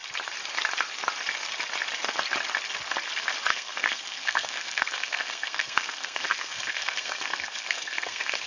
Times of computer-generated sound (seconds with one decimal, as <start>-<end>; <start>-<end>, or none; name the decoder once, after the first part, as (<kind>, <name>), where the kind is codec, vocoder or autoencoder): 3.5-8.5 (codec, SNAC)